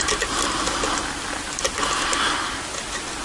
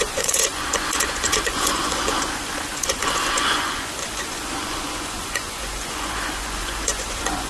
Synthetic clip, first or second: second